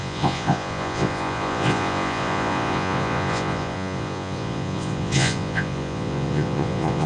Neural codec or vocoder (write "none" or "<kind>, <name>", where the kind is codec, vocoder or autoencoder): vocoder, Vocos